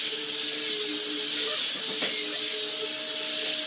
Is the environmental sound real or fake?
real